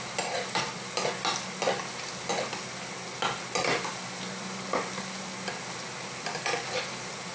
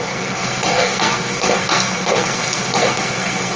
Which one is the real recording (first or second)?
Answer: first